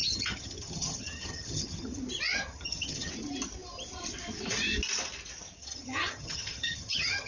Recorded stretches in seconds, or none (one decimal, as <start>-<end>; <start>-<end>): 2.0-2.5; 3.1-5.6